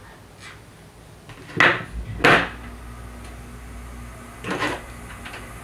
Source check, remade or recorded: recorded